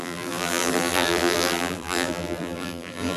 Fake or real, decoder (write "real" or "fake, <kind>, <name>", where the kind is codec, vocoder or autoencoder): fake, vocoder, BigVGAN v2